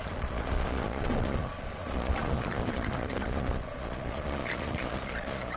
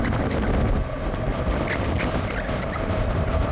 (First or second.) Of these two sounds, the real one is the second